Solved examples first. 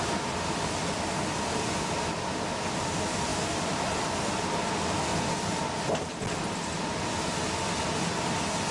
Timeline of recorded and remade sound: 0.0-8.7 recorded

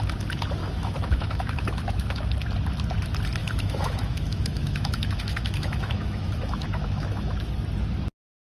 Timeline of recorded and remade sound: 0.0-0.6 recorded; 0.6-2.3 remade; 2.3-3.4 recorded; 3.4-7.5 remade; 7.5-8.5 recorded

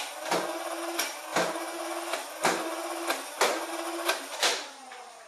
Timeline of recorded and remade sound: 0.0-5.3 recorded

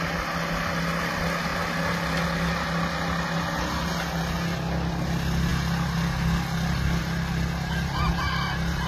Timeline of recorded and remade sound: 0.0-8.9 recorded